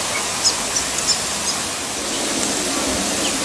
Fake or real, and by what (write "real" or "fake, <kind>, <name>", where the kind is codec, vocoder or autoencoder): real